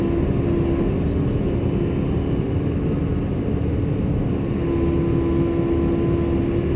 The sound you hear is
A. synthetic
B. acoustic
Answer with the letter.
B